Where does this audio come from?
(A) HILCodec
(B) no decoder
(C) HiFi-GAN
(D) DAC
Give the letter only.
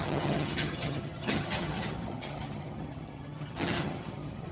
C